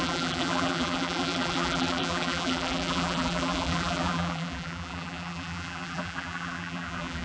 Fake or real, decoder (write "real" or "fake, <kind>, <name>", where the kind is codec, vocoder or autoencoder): fake, vocoder, BigVGAN v2